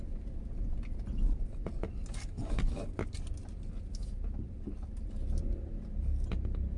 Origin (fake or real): real